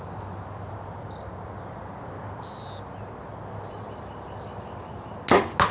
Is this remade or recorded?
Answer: recorded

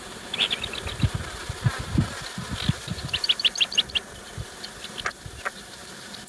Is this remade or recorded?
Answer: recorded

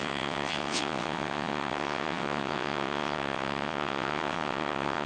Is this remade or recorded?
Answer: remade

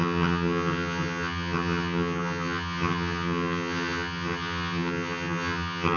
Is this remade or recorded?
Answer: remade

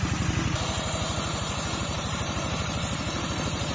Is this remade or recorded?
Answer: remade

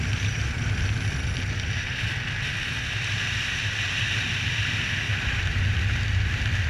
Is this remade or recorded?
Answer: recorded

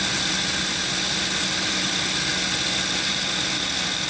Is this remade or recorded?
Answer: recorded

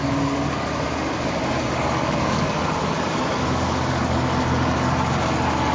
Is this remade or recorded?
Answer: remade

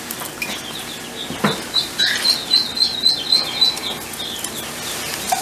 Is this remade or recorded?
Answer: recorded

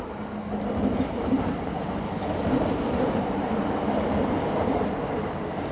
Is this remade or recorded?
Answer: recorded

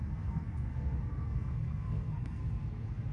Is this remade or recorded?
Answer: remade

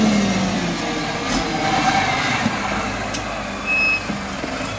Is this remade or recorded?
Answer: recorded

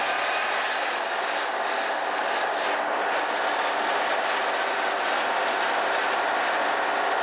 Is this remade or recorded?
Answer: recorded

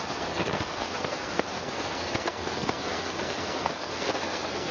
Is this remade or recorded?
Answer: remade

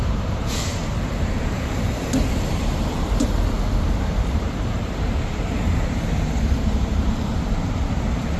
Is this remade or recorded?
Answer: remade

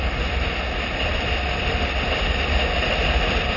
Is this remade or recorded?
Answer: recorded